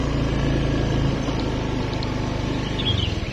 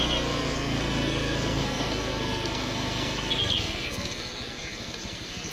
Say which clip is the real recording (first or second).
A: first